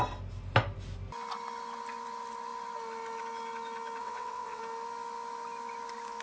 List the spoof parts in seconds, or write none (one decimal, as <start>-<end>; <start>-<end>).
4.0-4.6

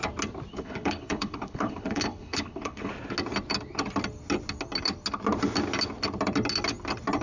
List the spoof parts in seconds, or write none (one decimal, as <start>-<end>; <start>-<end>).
0.5-2.9

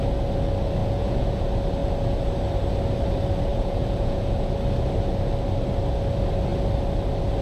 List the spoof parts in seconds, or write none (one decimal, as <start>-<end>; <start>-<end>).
0.8-1.4; 3.5-4.5

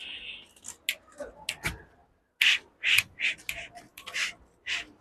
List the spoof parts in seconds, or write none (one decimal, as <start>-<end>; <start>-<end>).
3.9-5.0

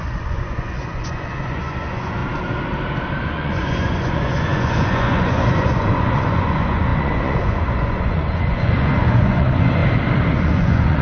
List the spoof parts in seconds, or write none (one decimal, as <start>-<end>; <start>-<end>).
0.0-2.2; 3.3-9.8; 10.3-11.0